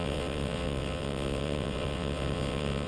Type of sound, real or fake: fake